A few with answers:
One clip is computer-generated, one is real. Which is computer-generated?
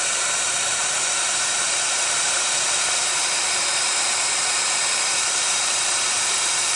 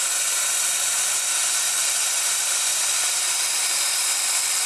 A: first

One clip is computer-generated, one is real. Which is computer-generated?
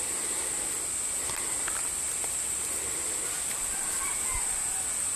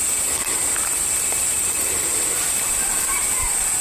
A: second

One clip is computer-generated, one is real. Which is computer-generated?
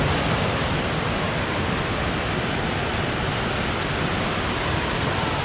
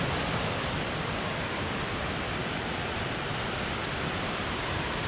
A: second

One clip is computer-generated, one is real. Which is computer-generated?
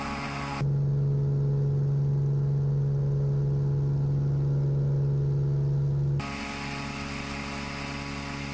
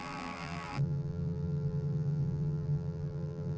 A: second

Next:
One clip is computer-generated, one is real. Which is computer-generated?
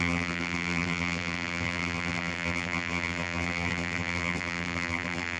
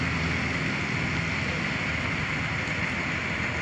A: first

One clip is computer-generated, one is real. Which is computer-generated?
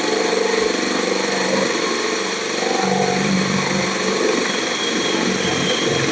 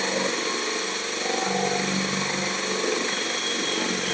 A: first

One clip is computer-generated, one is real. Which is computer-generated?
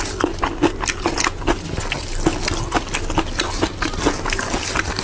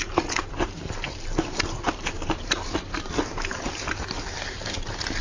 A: second